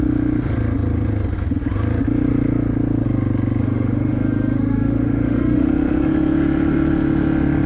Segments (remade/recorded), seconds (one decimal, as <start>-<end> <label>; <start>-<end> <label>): 0.0-3.6 recorded; 3.6-5.7 remade; 5.7-7.7 recorded